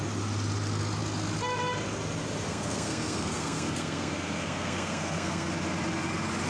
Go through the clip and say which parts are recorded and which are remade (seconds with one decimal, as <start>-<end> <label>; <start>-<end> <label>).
0.0-2.5 recorded; 2.5-5.5 remade; 5.5-6.5 recorded